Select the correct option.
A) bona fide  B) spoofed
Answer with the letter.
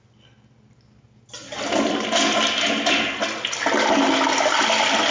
A